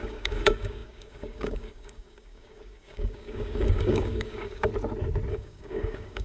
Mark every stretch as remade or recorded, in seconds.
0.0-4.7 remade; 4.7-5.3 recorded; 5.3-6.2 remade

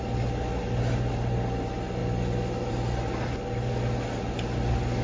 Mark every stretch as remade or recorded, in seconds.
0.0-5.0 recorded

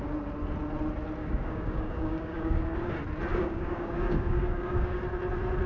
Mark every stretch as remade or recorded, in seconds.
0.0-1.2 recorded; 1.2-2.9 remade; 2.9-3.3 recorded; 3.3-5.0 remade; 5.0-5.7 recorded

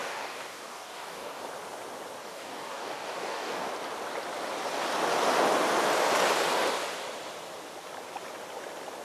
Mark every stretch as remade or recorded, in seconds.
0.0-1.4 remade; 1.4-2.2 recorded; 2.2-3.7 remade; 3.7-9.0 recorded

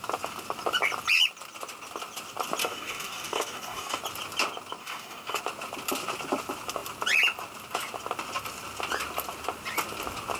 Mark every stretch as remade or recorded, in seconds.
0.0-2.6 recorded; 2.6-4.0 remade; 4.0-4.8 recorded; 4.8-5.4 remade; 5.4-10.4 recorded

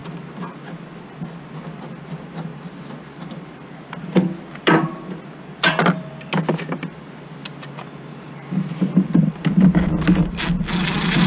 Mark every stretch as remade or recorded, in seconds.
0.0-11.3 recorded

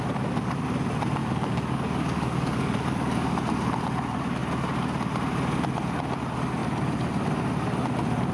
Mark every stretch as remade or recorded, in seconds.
0.0-1.2 recorded; 1.2-3.4 remade; 3.4-8.3 recorded